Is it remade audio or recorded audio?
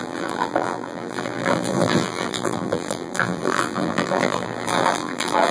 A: remade